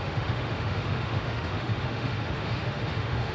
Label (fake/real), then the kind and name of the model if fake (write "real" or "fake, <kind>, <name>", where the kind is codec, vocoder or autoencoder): fake, autoencoder, DAC-VAE